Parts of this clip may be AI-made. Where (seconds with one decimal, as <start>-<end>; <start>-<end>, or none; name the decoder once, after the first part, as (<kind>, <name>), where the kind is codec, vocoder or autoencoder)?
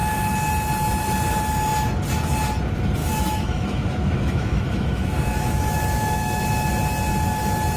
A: 3.0-6.7 (autoencoder, DAC-VAE)